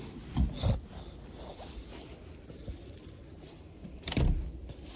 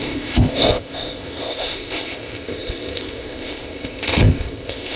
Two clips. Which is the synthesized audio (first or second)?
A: second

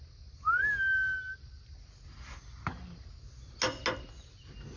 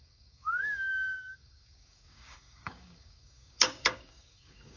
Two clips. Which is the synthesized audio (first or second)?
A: second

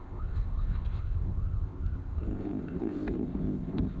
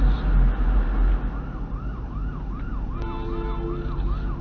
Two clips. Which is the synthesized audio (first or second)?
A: first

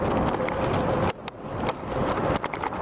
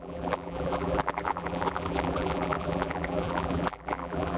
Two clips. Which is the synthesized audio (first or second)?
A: second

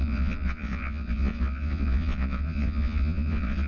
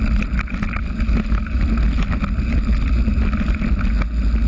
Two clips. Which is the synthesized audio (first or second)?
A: first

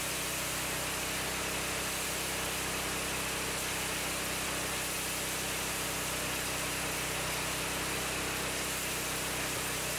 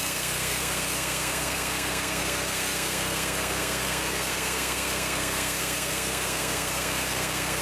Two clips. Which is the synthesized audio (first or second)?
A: second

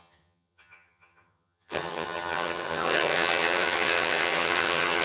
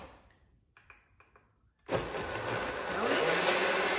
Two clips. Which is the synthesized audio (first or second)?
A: first